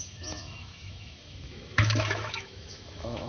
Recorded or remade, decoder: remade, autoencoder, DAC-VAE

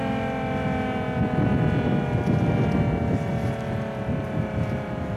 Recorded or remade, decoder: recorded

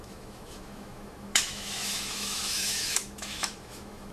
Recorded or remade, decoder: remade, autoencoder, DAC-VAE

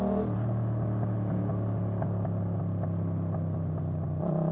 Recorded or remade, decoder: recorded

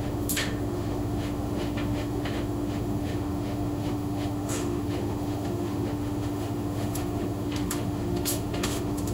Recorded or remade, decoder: remade, autoencoder, DAC-VAE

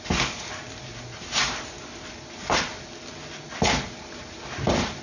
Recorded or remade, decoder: recorded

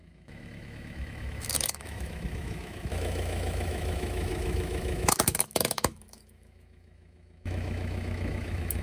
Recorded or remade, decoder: remade, autoencoder, DAC-VAE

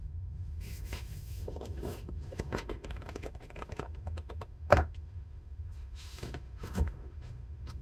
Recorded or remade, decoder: remade, autoencoder, DAC-VAE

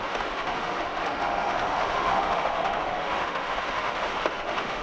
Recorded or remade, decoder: remade, autoencoder, DAC-VAE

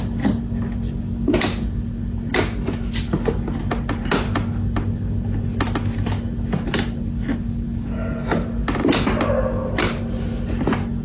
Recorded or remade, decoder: recorded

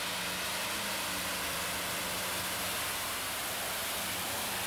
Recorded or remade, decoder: recorded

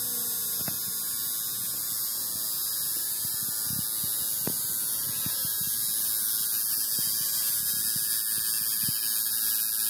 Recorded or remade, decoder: recorded